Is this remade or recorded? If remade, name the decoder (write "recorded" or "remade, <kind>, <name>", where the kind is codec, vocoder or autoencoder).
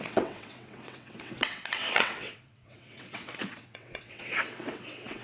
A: remade, vocoder, WaveNeXt